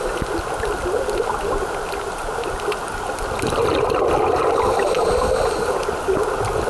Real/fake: real